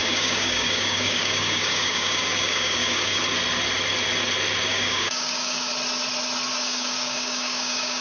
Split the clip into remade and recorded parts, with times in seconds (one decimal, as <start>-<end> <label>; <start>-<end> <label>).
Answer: 0.0-3.2 remade; 3.2-4.7 recorded; 4.7-5.7 remade; 5.7-6.5 recorded; 6.5-8.0 remade